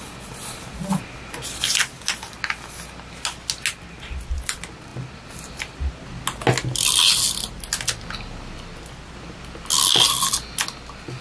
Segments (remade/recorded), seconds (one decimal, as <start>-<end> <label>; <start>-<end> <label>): 0.0-11.2 recorded